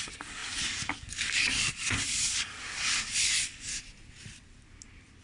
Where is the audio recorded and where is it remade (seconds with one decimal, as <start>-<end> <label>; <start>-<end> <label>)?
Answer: 0.0-3.7 remade; 3.7-5.2 recorded